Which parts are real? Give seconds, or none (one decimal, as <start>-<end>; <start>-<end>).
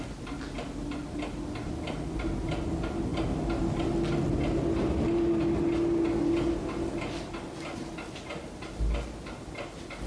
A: 0.0-10.1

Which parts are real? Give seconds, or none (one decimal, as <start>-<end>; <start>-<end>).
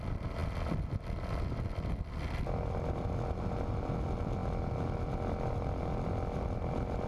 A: 0.0-7.1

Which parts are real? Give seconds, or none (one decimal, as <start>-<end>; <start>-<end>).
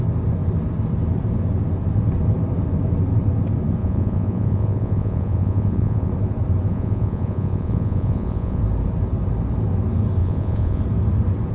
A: 0.0-3.8; 6.1-6.7; 8.6-10.2; 10.8-11.5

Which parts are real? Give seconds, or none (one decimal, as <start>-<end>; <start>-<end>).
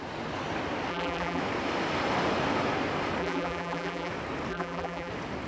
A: 0.0-0.9; 1.4-3.2; 4.1-4.5; 5.1-5.5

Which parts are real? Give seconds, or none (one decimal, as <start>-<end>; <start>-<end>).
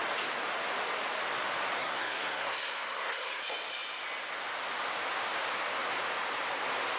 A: 0.0-1.8; 3.4-7.0